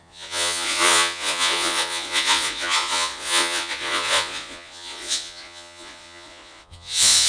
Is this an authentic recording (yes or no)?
no